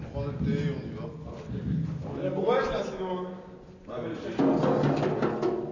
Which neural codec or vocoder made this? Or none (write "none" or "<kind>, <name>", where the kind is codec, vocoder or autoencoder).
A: none